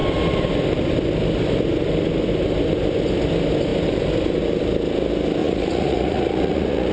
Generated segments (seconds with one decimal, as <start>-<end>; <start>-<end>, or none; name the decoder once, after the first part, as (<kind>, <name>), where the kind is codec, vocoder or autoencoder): 5.4-6.9 (vocoder, Vocos)